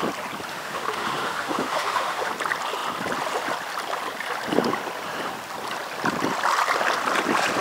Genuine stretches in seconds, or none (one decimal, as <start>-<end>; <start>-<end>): 0.0-0.5; 2.3-7.6